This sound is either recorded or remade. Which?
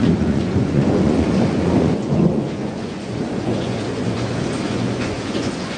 remade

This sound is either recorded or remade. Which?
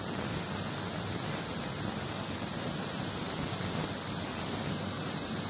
recorded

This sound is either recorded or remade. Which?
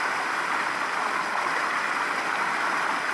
recorded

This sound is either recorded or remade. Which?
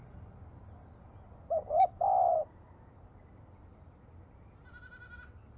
recorded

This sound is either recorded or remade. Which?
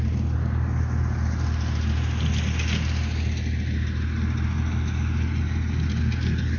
recorded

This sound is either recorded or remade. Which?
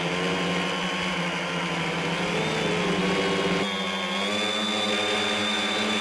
recorded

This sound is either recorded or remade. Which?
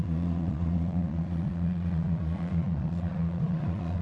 remade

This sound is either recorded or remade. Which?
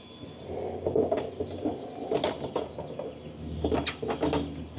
recorded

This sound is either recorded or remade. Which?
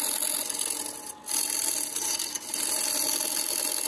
recorded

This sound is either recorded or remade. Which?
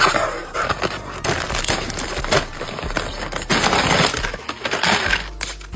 recorded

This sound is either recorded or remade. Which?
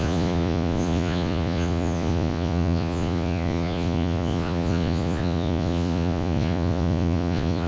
remade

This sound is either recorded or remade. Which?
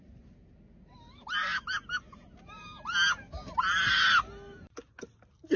recorded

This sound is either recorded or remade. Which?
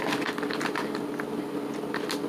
recorded